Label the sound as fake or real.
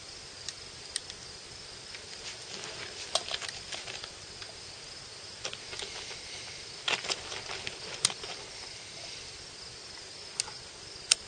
real